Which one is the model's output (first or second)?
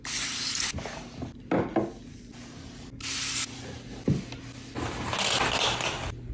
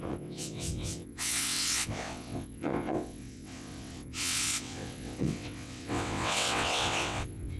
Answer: second